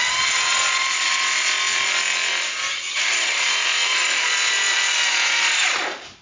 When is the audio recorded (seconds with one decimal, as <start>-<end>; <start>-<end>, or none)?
0.0-2.7; 3.4-6.2